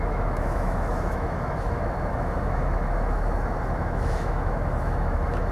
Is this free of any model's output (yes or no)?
no